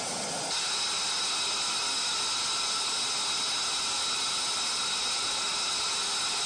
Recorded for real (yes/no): yes